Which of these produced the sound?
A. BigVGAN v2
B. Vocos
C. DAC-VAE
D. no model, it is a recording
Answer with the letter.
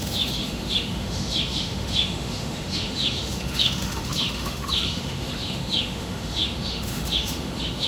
C